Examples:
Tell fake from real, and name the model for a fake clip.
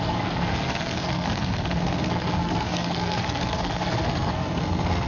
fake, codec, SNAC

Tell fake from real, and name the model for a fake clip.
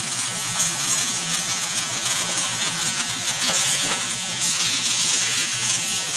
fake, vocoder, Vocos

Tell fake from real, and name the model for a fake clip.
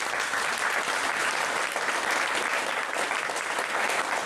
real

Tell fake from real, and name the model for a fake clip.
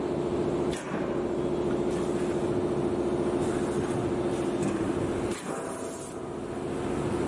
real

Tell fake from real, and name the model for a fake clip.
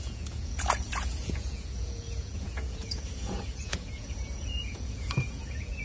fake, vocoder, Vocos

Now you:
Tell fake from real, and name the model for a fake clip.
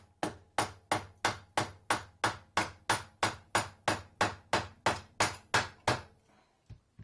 real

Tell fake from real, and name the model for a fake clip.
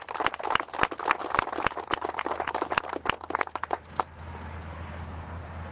real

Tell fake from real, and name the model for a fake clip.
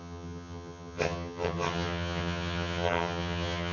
fake, vocoder, HiFi-GAN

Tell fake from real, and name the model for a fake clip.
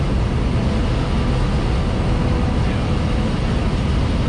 real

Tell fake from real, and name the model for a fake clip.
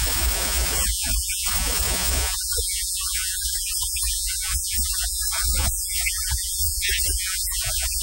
fake, vocoder, Vocos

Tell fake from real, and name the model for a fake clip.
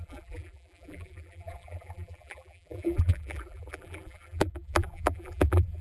fake, vocoder, BigVGAN v2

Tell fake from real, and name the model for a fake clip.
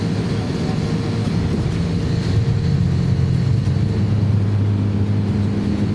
real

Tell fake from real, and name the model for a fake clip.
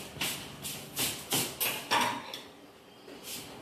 real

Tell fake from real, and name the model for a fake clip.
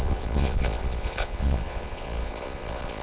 fake, vocoder, Vocos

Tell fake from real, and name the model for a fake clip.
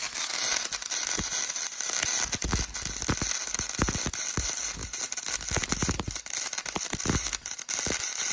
real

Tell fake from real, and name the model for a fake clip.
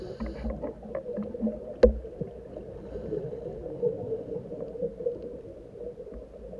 real